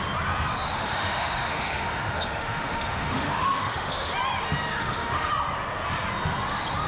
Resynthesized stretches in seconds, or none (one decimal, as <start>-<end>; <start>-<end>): 0.7-4.1; 4.8-5.3